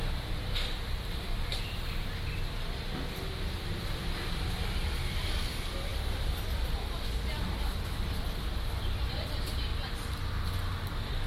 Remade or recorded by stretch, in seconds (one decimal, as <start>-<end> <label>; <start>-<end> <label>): 0.0-9.7 remade; 9.7-10.9 recorded; 10.9-11.3 remade

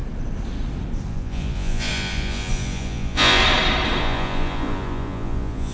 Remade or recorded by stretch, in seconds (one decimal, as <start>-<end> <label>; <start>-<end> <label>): 0.0-1.1 recorded; 1.1-3.4 remade; 3.4-4.0 recorded; 4.0-5.7 remade

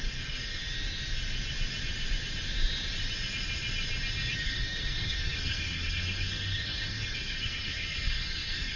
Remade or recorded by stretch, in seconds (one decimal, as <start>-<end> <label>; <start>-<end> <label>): 0.0-0.6 remade; 0.6-4.3 recorded; 4.3-8.8 remade

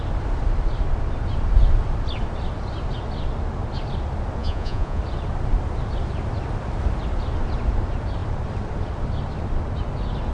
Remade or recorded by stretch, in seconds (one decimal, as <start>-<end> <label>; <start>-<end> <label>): 0.0-4.4 recorded; 4.4-5.0 remade; 5.0-10.3 recorded

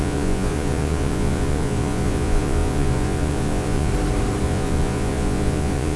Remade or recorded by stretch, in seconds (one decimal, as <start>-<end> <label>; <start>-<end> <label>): 0.0-3.9 remade; 3.9-4.4 recorded; 4.4-6.0 remade

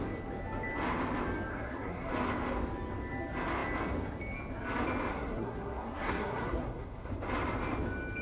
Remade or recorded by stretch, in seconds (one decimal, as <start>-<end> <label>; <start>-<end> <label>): 0.0-1.5 recorded; 1.5-2.1 remade; 2.1-5.1 recorded; 5.1-7.1 remade; 7.1-8.2 recorded

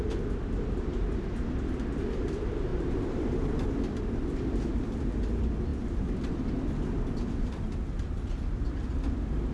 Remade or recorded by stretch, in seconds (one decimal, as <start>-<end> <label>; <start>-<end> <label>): 0.0-2.7 recorded; 2.7-4.0 remade; 4.0-9.5 recorded

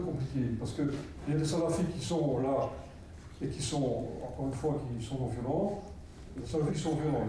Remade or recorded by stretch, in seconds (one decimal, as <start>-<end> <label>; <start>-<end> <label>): 0.0-6.1 recorded; 6.1-6.7 remade; 6.7-7.3 recorded